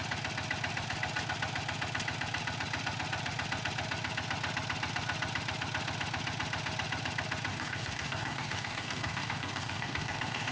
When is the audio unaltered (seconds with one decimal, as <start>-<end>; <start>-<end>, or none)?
0.0-7.5